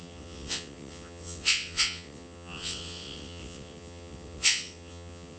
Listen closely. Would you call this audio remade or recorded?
remade